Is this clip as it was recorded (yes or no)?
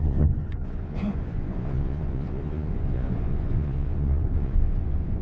no